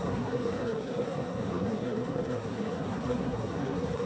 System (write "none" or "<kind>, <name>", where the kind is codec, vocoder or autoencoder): codec, SNAC